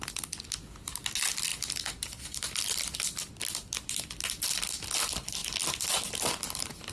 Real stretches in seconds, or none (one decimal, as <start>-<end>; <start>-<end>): 0.0-6.9